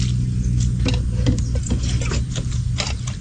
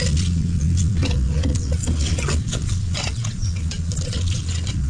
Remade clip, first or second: second